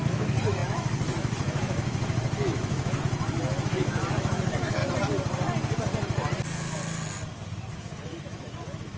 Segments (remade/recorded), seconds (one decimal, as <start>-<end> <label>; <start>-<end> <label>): 0.0-4.8 remade; 4.8-7.7 recorded; 7.7-9.0 remade